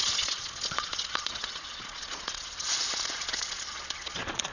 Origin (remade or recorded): remade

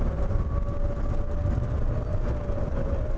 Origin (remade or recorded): recorded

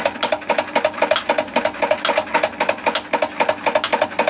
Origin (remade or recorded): recorded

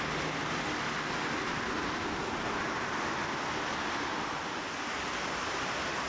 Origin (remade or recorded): recorded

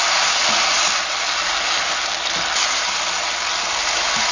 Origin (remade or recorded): recorded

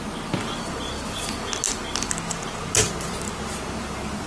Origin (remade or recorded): recorded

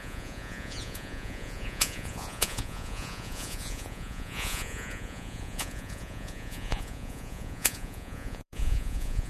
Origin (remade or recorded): remade